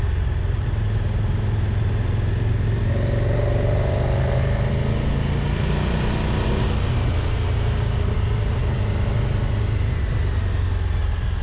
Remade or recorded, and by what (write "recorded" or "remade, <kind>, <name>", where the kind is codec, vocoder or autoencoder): recorded